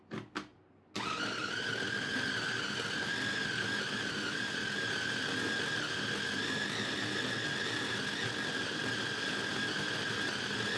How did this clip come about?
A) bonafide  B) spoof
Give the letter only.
A